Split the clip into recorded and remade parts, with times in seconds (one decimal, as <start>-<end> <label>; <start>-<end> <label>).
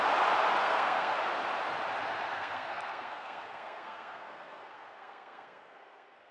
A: 0.0-0.6 recorded; 0.6-1.2 remade; 1.2-2.3 recorded; 2.3-6.3 remade